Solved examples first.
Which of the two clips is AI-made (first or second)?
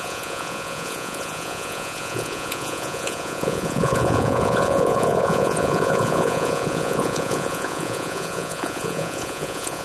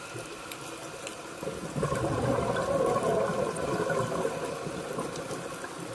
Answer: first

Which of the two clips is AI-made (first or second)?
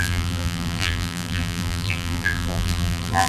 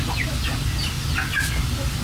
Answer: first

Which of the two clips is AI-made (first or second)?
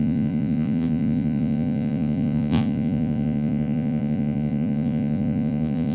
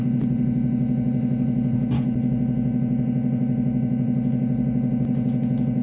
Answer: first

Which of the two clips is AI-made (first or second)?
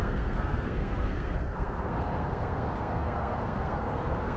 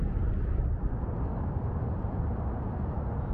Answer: first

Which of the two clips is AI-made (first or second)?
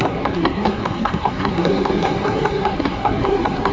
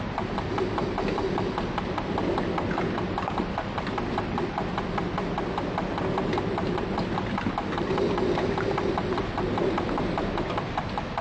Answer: first